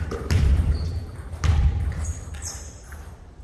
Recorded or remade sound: remade